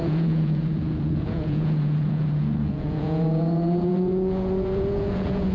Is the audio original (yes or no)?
no